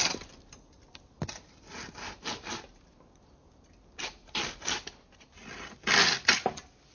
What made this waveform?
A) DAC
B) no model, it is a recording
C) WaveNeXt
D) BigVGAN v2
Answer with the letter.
B